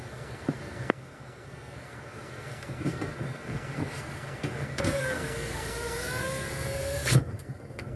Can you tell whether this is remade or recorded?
remade